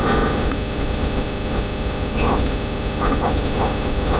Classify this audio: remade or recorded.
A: remade